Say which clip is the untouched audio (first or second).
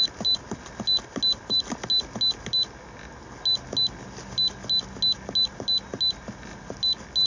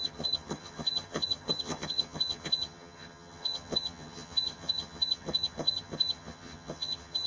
first